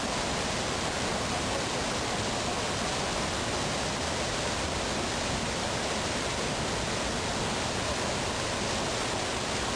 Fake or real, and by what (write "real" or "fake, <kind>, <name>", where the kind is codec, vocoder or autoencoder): real